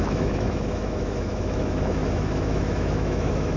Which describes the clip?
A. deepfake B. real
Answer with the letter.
A